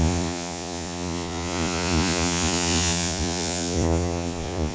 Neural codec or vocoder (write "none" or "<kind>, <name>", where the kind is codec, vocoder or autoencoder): vocoder, Vocos